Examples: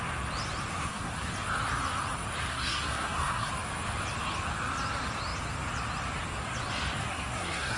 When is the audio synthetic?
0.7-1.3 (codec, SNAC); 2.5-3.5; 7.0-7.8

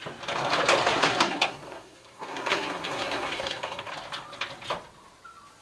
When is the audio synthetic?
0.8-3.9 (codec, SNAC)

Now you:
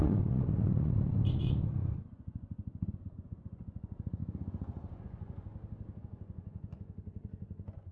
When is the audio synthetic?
0.0-5.5 (vocoder, Vocos); 6.0-7.9

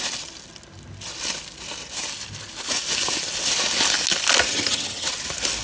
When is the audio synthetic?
4.5-5.1 (vocoder, HiFi-GAN)